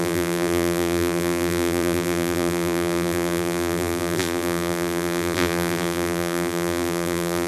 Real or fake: fake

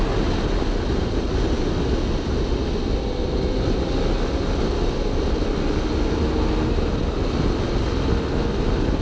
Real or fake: real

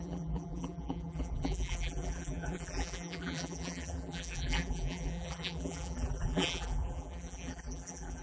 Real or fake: fake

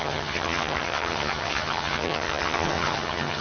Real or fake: fake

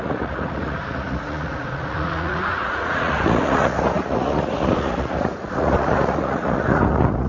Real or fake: fake